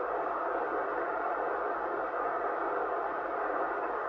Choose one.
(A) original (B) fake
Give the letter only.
A